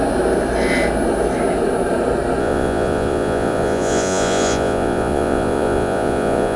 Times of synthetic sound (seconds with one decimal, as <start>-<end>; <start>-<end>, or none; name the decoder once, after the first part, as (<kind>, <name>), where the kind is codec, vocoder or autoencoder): 2.4-6.6 (vocoder, Vocos)